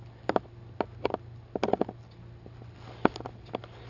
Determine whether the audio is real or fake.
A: real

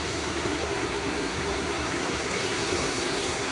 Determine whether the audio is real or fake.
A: fake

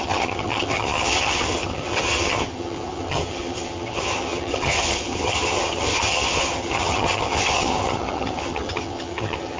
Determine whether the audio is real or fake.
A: fake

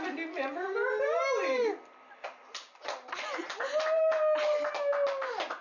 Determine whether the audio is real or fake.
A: real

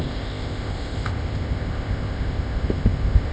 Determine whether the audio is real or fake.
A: fake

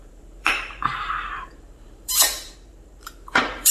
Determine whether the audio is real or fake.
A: fake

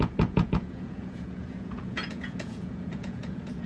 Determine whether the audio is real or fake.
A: fake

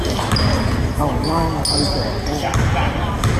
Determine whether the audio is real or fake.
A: real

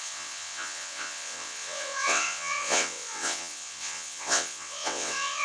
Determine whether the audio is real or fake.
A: fake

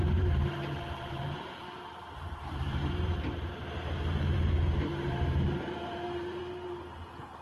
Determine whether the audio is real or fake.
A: fake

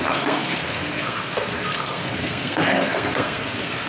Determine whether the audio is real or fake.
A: fake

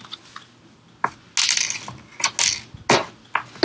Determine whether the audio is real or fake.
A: real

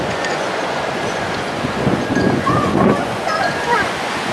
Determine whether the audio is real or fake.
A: fake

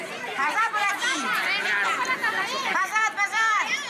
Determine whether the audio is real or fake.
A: fake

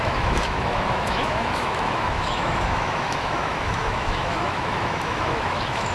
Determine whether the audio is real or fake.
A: fake